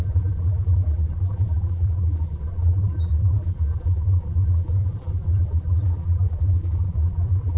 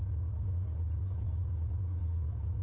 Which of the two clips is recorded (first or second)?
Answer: second